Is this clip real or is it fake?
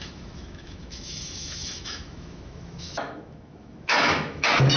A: fake